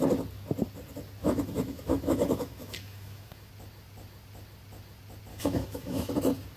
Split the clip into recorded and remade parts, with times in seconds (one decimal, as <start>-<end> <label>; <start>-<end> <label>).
0.0-1.2 recorded; 1.2-3.5 remade; 3.5-5.3 recorded; 5.3-6.1 remade; 6.1-6.6 recorded